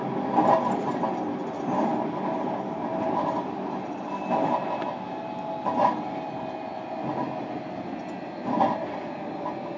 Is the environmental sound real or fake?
real